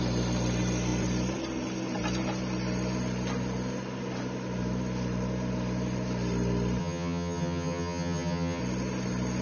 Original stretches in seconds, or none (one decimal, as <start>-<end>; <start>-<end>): 0.0-6.8; 8.6-9.4